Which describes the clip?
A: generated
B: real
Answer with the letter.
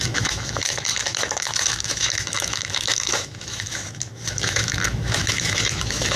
A